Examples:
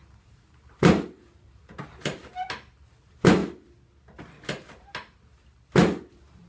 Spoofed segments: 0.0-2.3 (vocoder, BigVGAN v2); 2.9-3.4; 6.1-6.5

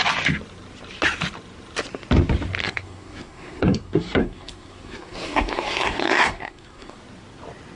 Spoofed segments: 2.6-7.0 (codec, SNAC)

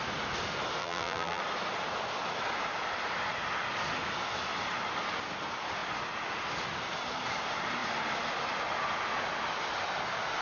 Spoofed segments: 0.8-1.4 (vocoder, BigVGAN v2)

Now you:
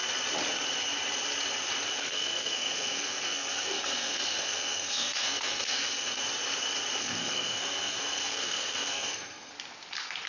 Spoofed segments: 2.0-6.2 (codec, SNAC); 7.0-9.5

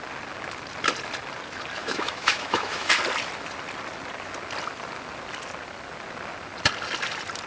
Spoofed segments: 1.8-2.9 (autoencoder, DAC-VAE)

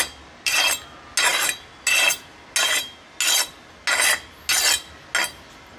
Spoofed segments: none

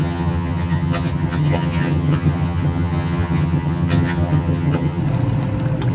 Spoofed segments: 0.0-5.0 (vocoder, HiFi-GAN)